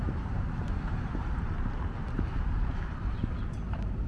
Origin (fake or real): fake